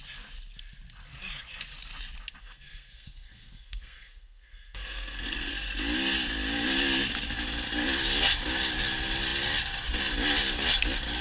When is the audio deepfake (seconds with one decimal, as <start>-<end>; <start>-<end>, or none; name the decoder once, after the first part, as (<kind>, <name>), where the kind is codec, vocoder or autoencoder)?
2.4-5.5 (codec, SNAC)